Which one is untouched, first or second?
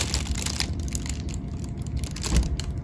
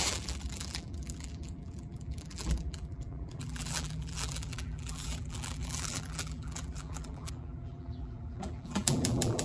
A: first